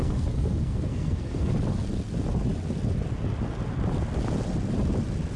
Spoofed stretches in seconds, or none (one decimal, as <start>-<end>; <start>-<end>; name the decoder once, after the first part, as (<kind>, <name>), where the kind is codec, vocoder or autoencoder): 0.0-1.5 (codec, SNAC)